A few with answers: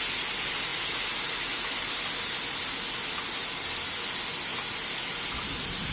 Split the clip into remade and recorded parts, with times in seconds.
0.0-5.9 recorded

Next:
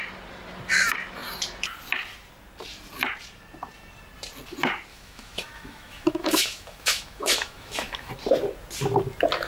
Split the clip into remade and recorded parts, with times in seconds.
0.0-4.9 recorded; 4.9-8.1 remade; 8.1-9.5 recorded